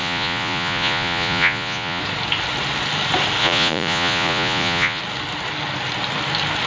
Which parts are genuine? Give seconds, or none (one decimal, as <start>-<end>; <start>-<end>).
2.0-3.4; 5.0-6.7